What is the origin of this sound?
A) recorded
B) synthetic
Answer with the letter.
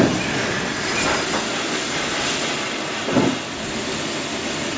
A